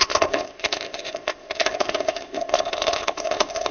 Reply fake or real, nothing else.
fake